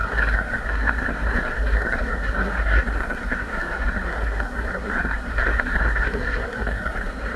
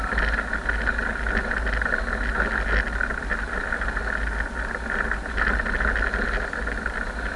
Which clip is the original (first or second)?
second